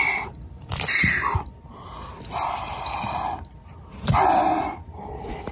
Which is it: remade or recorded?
recorded